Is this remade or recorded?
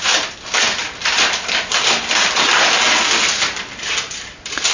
recorded